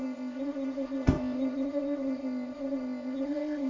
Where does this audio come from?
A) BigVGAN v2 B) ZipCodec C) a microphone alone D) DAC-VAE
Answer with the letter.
B